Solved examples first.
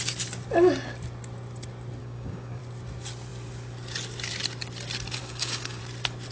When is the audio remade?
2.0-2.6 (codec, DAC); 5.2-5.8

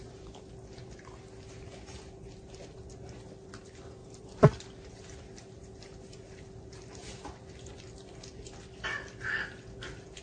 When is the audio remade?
none

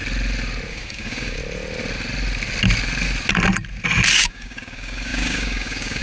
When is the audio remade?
0.7-1.4 (codec, DAC); 4.1-6.0